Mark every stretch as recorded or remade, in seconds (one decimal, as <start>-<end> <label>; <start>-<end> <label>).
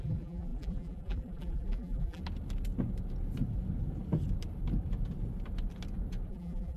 0.0-2.2 remade; 2.2-6.3 recorded; 6.3-6.8 remade